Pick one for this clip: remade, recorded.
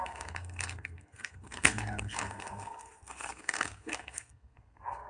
remade